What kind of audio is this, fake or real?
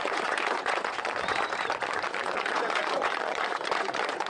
fake